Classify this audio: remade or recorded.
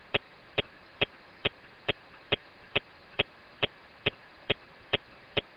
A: remade